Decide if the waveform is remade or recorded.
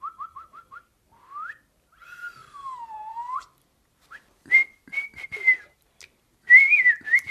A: remade